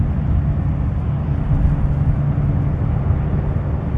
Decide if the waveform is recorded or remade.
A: recorded